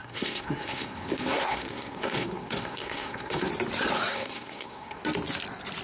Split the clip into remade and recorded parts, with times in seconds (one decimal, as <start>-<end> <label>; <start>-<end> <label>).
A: 0.0-3.5 remade; 3.5-4.1 recorded; 4.1-5.0 remade; 5.0-5.8 recorded